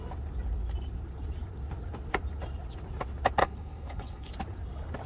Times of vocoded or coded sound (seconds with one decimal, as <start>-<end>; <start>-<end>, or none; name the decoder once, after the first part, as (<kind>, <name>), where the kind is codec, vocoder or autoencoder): 3.4-4.3 (codec, HILCodec)